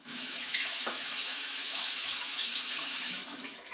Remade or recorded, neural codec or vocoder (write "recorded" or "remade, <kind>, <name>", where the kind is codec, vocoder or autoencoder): remade, autoencoder, DAC-VAE